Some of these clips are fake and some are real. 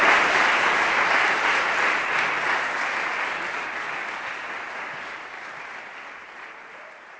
real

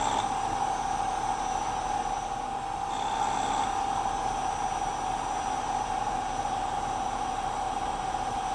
real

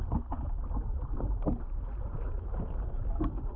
real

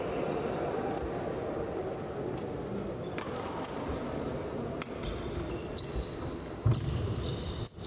real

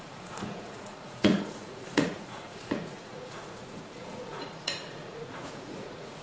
fake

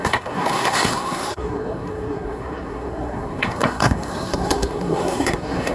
fake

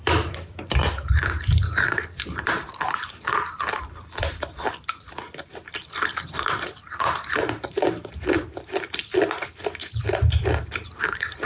fake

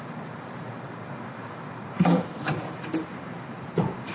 fake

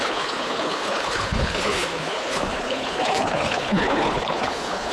fake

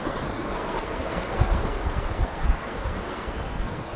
fake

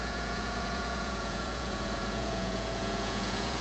fake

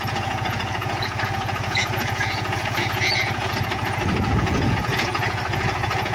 fake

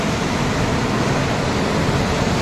real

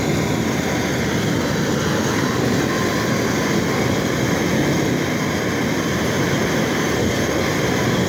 real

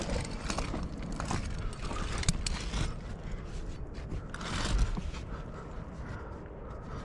real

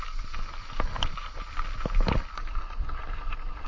real